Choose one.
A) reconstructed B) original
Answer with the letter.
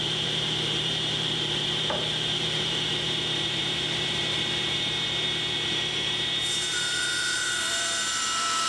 A